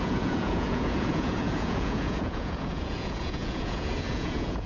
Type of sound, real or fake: fake